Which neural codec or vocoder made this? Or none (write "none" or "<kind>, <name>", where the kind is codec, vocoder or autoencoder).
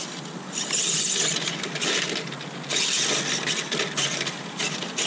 none